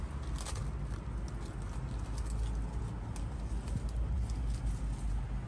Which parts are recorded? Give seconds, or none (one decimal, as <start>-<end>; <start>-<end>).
0.0-5.5